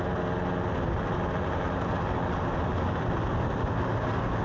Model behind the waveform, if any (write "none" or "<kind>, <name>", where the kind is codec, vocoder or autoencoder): none